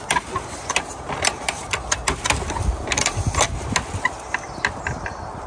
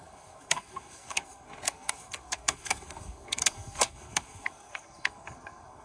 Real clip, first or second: first